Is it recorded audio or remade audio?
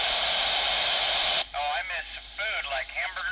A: recorded